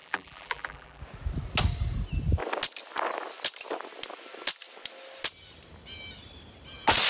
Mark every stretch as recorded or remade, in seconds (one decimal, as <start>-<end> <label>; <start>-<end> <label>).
0.0-1.0 remade; 1.0-7.1 recorded

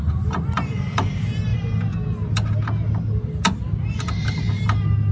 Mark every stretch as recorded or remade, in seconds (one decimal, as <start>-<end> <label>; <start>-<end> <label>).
0.0-5.1 recorded

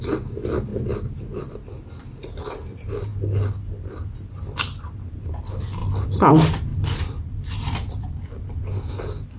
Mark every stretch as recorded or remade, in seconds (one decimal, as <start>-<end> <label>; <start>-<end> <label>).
0.0-9.4 recorded

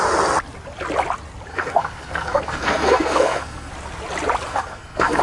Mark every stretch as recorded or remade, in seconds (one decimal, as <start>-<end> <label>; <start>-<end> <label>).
0.0-1.5 recorded; 1.5-3.7 remade; 3.7-4.5 recorded; 4.5-5.2 remade

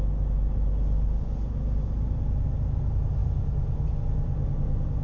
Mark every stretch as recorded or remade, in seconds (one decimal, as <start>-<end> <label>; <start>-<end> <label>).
0.0-5.0 recorded

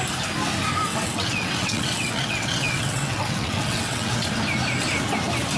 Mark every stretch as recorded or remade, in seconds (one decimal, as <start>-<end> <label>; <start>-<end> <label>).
0.0-0.9 recorded; 0.9-4.3 remade; 4.3-5.6 recorded

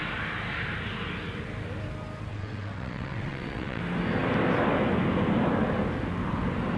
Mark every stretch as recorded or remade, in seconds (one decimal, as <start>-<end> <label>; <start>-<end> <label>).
0.0-2.3 recorded; 2.3-3.8 remade; 3.8-6.8 recorded

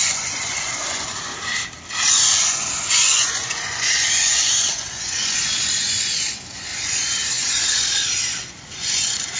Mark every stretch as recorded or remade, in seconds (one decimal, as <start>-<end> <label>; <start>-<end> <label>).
0.0-1.3 remade; 1.3-2.1 recorded; 2.1-9.4 remade